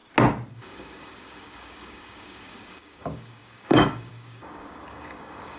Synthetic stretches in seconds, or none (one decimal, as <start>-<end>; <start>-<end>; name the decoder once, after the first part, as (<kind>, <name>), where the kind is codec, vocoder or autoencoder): 0.5-5.6 (codec, DAC)